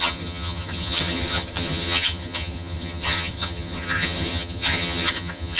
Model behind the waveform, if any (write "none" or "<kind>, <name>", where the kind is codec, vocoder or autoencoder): vocoder, HiFi-GAN